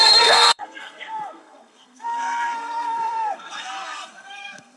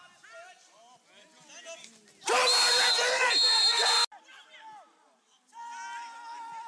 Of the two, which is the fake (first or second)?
first